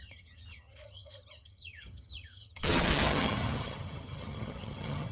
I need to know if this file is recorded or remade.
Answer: remade